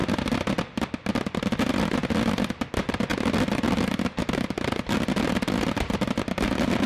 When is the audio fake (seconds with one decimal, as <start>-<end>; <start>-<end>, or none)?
none